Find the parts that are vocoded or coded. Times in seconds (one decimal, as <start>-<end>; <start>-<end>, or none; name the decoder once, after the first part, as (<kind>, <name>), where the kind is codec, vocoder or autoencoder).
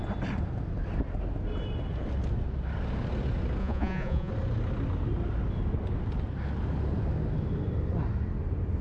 3.6-4.3 (vocoder, Vocos)